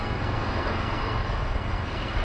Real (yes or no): no